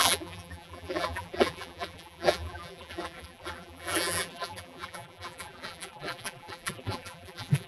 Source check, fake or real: fake